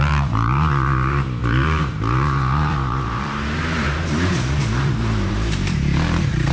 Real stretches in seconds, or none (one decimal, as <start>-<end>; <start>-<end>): none